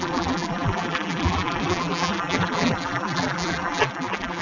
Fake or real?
fake